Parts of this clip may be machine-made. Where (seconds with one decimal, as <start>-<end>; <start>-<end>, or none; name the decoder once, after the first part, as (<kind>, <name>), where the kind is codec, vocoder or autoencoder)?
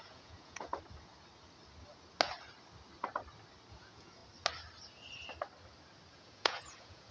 0.0-0.7 (vocoder, Vocos); 3.7-4.2; 6.1-7.1